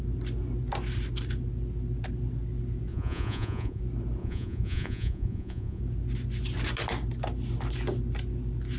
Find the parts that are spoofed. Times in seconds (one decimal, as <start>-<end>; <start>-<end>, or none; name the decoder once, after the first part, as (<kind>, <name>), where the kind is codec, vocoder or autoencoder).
2.9-3.8 (vocoder, Vocos); 4.2-5.8